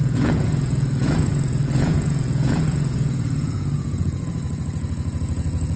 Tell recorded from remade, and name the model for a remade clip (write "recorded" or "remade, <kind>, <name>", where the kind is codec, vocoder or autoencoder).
remade, vocoder, Vocos